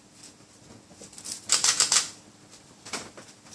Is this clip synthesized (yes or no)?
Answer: no